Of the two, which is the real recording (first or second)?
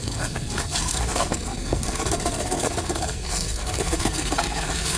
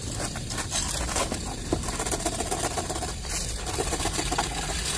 second